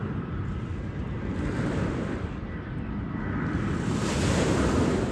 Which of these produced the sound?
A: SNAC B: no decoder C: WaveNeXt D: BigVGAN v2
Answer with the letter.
B